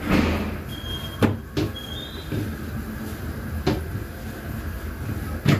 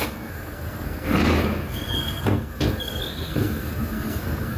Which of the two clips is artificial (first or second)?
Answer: second